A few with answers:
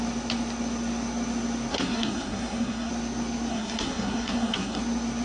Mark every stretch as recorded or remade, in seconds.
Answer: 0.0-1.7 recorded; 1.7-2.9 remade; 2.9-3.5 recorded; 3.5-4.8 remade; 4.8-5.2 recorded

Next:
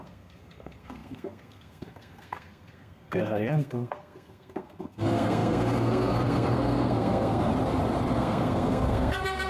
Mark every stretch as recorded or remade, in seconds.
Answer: 0.0-7.5 remade; 7.5-8.1 recorded; 8.1-9.5 remade

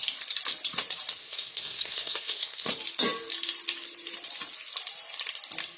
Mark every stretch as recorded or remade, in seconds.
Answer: 0.0-1.2 recorded; 1.2-2.7 remade; 2.7-5.8 recorded

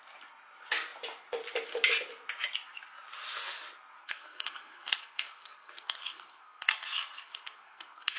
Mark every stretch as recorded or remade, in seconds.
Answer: 0.0-4.0 recorded; 4.0-8.2 remade

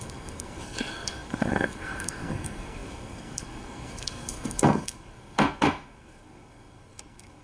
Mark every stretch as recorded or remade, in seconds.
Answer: 0.0-7.4 remade

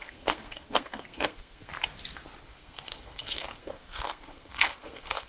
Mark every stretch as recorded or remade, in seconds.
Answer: 0.0-1.7 remade; 1.7-2.4 recorded; 2.4-5.3 remade

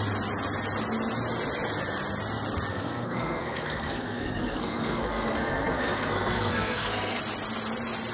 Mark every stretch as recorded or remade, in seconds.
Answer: 0.0-2.7 recorded; 2.7-7.2 remade; 7.2-8.1 recorded

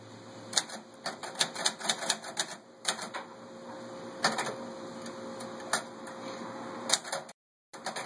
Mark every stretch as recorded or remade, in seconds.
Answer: 0.0-8.1 recorded